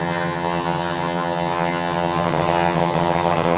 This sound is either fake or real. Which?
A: fake